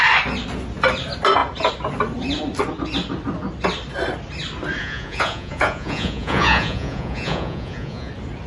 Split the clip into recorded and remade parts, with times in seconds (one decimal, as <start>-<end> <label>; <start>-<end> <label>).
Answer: 0.0-4.8 recorded; 4.8-8.1 remade; 8.1-8.5 recorded